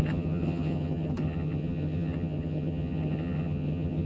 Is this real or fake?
fake